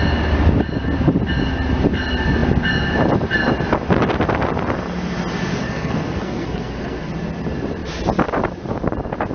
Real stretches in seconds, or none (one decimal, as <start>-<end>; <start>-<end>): 0.0-5.5; 7.1-9.3